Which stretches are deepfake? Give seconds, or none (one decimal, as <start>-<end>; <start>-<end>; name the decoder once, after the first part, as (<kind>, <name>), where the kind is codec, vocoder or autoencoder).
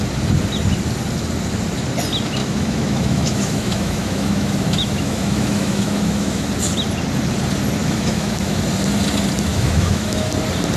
2.4-6.5 (autoencoder, DAC-VAE); 7.8-8.6; 9.5-10.3